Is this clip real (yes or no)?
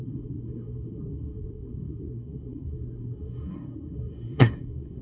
no